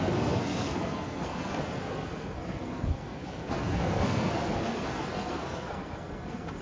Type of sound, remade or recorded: remade